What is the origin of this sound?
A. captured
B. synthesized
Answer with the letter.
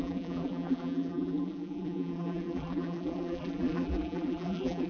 B